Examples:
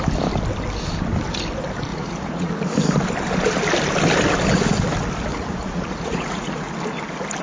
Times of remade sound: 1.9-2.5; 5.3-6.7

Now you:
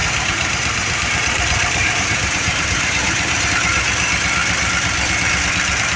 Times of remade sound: 0.0-3.5